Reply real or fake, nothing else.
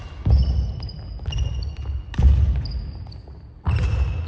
real